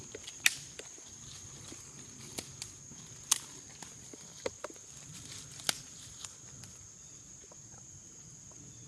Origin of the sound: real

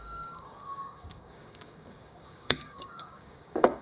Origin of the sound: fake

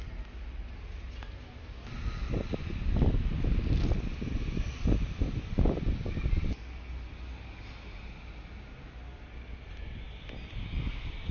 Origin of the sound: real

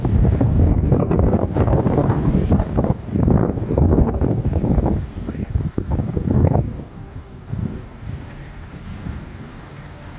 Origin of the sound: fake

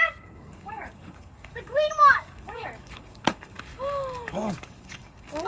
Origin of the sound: fake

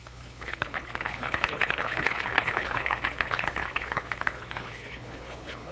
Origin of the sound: fake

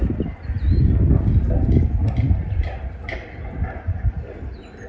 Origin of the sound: real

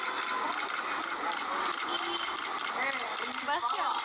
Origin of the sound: real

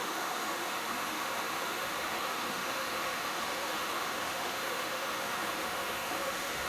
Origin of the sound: fake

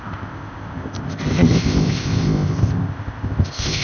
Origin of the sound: fake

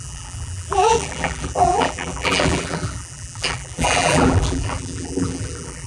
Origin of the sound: fake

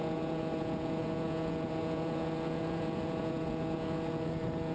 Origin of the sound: fake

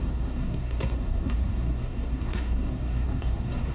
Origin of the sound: fake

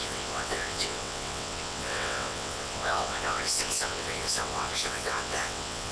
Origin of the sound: fake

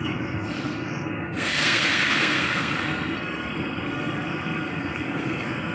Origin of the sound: fake